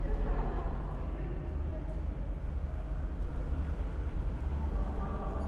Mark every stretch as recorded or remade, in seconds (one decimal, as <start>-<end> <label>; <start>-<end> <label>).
0.0-5.5 recorded